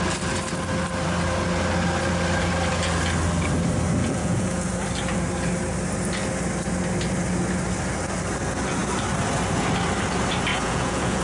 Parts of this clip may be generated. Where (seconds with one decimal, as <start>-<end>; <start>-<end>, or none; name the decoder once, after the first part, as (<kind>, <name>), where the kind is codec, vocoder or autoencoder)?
4.0-4.7 (vocoder, Vocos); 10.5-11.2